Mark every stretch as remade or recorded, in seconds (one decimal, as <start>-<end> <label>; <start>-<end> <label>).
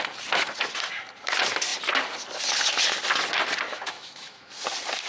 0.0-3.7 recorded; 3.7-4.5 remade; 4.5-5.1 recorded